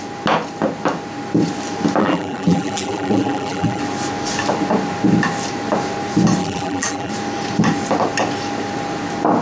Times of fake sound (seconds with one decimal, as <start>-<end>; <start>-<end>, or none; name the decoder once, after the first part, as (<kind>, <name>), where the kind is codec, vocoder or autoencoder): 2.0-3.8 (vocoder, BigVGAN v2); 6.4-7.1